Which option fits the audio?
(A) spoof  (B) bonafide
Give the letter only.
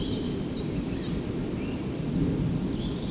B